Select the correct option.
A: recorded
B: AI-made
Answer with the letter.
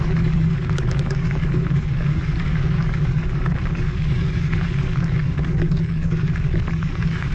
B